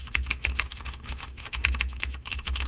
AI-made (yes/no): yes